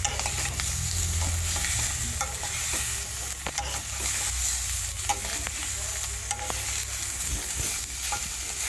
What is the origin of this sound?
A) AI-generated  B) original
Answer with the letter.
B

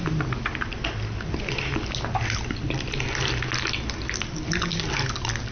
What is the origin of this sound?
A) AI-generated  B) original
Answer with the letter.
B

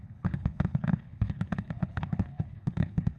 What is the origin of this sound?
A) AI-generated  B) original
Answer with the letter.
A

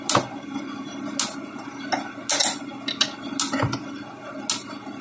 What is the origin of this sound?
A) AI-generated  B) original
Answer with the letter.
B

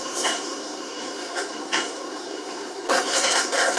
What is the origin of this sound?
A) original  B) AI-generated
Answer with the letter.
B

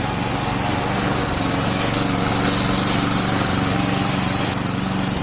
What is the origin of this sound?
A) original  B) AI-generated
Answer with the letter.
A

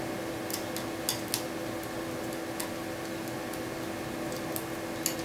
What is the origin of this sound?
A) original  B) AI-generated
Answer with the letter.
A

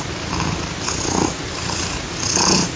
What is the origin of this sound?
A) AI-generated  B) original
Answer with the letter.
B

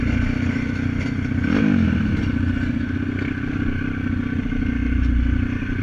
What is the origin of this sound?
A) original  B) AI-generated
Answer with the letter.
A